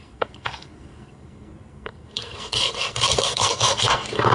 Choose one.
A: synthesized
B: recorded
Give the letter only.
A